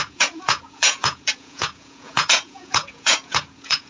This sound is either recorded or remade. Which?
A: remade